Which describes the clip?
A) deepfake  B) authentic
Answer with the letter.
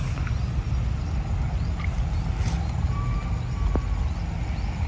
B